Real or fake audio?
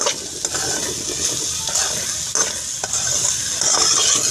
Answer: real